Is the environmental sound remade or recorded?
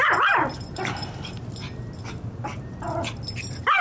recorded